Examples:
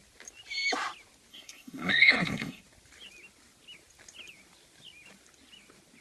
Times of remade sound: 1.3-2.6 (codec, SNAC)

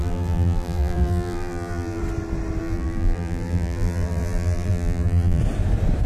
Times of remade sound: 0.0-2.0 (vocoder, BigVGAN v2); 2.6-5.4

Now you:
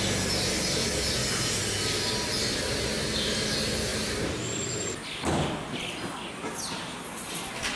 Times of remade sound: none

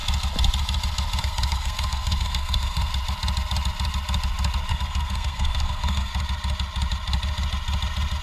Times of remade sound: 1.2-2.9 (codec, SNAC); 4.7-6.1